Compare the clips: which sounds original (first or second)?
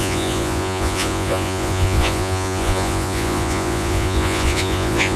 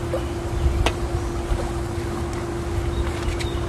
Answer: second